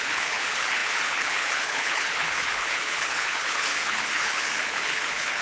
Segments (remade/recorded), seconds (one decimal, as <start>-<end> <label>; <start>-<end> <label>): 0.0-5.4 remade